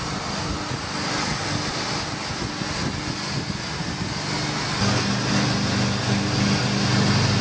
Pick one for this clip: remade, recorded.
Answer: recorded